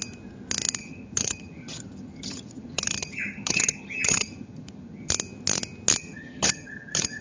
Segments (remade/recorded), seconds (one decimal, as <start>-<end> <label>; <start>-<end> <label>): 0.0-0.8 recorded; 0.8-5.1 remade; 5.1-6.0 recorded; 6.0-7.2 remade